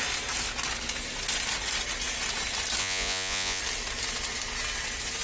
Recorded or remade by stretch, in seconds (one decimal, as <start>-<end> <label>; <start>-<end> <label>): 0.0-2.8 recorded; 2.8-3.6 remade; 3.6-5.2 recorded